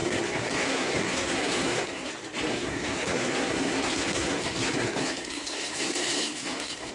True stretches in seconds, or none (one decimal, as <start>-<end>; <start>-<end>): 2.1-2.5